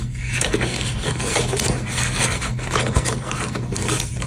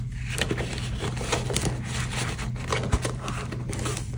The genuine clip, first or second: second